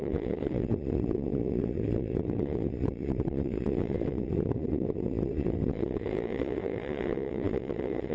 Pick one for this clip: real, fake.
fake